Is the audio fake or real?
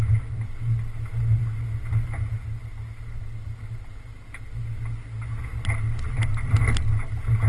real